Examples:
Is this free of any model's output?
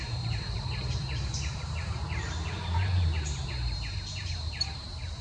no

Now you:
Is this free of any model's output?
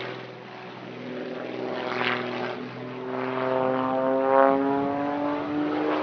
yes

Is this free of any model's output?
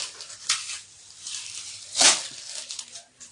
yes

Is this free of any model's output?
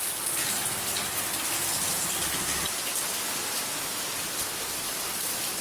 yes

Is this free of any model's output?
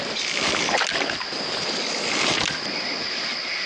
yes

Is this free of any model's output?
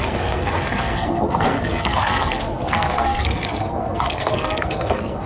no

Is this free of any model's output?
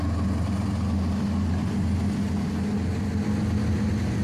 yes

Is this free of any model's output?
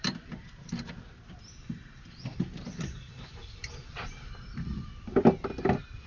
no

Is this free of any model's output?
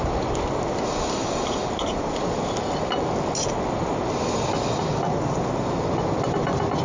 yes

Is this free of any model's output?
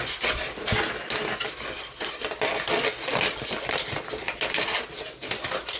yes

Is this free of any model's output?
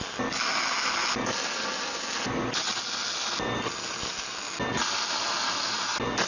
yes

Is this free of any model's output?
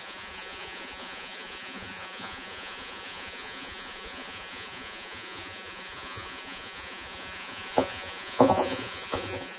no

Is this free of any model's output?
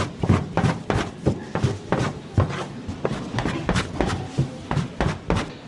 no